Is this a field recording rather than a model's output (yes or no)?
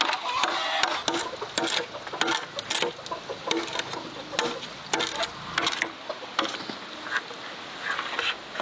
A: yes